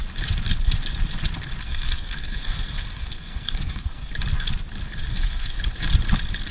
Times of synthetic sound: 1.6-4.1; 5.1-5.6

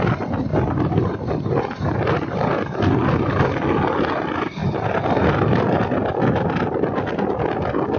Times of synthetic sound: 0.5-1.0

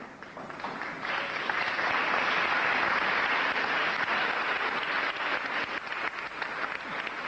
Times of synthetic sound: none